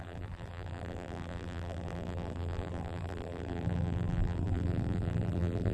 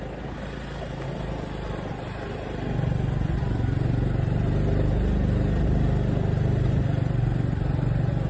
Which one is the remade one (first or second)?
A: first